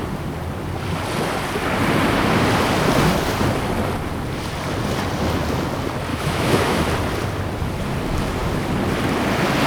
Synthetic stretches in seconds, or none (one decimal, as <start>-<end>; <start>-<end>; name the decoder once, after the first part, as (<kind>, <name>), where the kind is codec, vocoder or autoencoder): 6.1-6.8 (autoencoder, DAC-VAE)